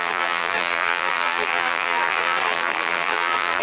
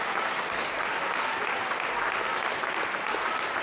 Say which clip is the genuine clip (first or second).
second